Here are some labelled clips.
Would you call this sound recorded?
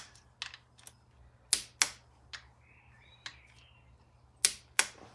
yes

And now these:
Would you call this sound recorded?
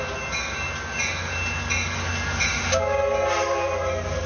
yes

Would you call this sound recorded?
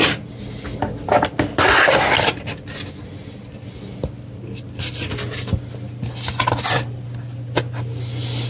yes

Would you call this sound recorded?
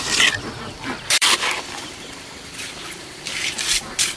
no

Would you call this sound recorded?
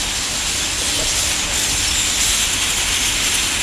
yes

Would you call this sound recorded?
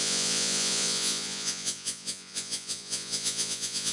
no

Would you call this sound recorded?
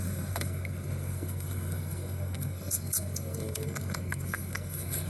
no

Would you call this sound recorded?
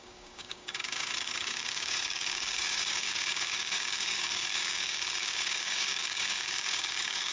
no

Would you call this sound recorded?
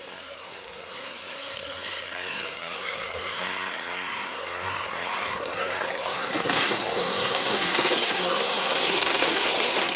no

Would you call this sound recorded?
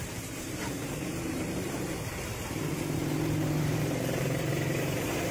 no